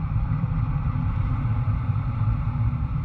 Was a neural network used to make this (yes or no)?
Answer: yes